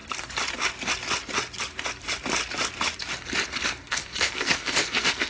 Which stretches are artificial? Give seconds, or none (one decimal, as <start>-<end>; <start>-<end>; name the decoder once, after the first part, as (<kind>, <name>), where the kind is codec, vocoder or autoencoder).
3.6-5.3 (codec, SNAC)